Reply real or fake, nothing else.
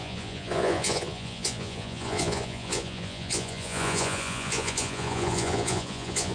fake